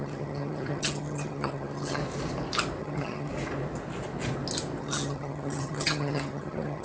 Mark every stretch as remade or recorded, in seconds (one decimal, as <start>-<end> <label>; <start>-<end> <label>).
0.0-2.0 remade; 2.0-2.8 recorded; 2.8-3.3 remade; 3.3-4.8 recorded; 4.8-6.8 remade